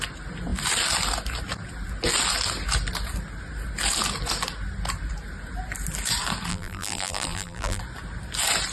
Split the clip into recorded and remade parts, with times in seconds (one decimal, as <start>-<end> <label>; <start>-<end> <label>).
0.0-6.5 recorded; 6.5-7.8 remade; 7.8-8.7 recorded